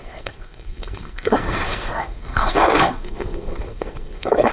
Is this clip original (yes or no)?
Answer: no